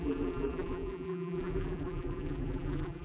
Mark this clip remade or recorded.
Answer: remade